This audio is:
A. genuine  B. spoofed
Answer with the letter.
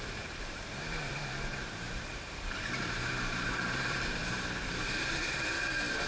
B